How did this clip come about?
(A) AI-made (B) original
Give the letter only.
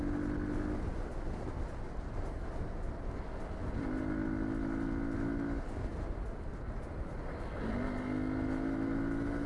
B